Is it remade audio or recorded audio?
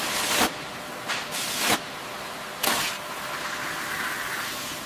recorded